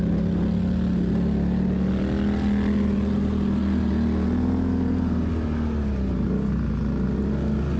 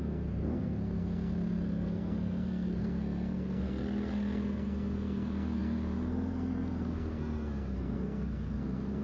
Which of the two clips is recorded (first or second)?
first